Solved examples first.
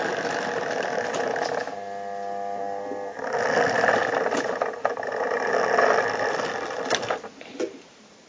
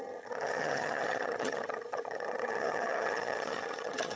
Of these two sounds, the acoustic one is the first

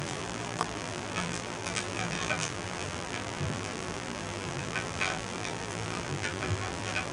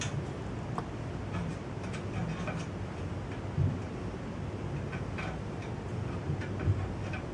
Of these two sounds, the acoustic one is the second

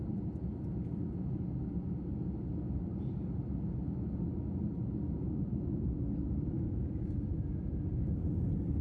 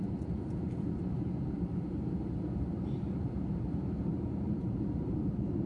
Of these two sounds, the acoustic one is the first